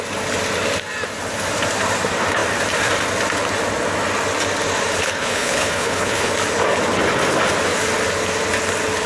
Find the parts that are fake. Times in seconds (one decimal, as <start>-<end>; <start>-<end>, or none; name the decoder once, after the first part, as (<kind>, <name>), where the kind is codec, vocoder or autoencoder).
5.0-6.3 (codec, HILCodec)